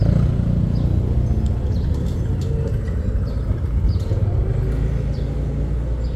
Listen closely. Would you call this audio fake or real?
real